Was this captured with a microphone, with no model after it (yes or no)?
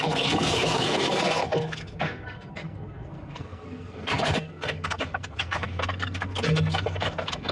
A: no